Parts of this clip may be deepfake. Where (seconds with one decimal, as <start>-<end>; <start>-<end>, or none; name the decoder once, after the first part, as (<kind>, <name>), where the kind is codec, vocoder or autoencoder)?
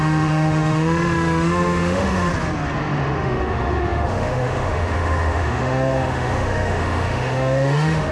0.0-2.3 (autoencoder, DAC-VAE); 2.8-8.1